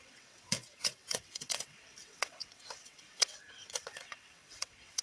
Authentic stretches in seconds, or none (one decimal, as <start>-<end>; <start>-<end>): none